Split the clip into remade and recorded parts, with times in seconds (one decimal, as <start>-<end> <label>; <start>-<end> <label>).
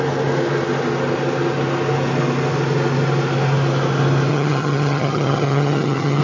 0.0-4.3 recorded; 4.3-6.2 remade